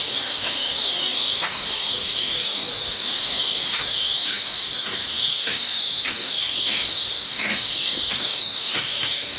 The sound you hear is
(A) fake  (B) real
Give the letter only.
A